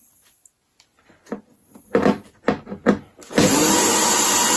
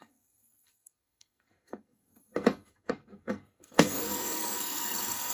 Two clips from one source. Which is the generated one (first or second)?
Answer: second